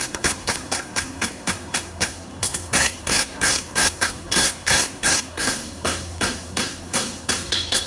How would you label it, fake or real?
fake